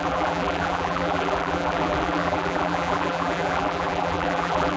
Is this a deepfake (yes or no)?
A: yes